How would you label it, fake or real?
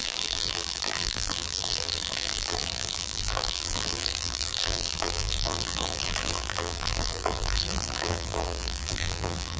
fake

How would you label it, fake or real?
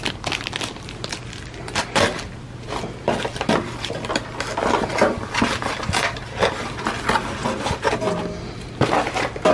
real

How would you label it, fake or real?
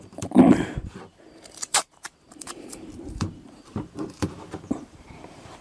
fake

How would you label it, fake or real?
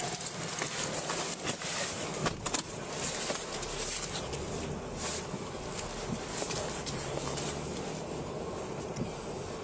real